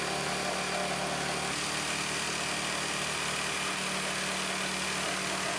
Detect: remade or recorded recorded